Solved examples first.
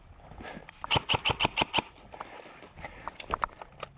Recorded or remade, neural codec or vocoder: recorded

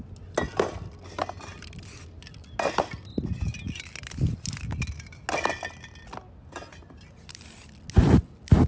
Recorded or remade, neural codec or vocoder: recorded